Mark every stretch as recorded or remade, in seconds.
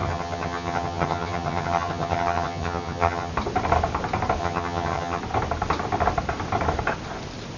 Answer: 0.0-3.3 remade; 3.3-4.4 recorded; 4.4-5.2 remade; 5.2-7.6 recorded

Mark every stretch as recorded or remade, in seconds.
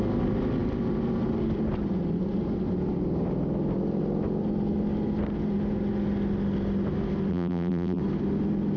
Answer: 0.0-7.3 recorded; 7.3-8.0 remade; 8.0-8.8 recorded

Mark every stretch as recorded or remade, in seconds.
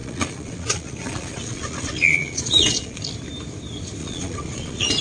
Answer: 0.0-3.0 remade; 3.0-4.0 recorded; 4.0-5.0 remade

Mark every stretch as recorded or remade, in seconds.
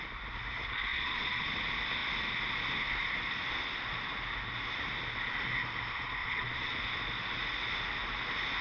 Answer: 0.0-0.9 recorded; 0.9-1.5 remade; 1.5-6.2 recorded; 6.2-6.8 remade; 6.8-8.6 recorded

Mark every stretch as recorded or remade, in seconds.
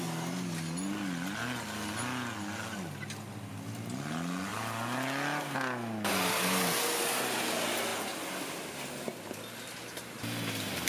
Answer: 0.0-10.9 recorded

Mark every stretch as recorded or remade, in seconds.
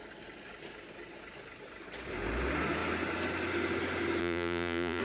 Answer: 0.0-4.2 recorded; 4.2-5.0 remade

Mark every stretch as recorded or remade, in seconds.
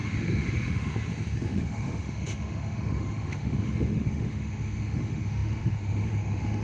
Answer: 0.0-6.6 remade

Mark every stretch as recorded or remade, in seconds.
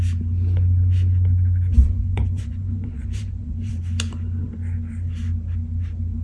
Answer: 0.0-1.8 recorded; 1.8-3.7 remade; 3.7-6.2 recorded